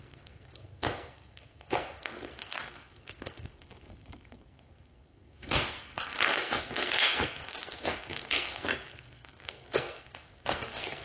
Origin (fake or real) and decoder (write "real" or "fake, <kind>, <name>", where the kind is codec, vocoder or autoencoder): fake, codec, SNAC